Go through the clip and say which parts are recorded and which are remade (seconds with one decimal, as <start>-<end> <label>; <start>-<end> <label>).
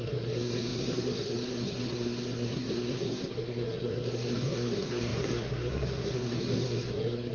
0.0-7.3 remade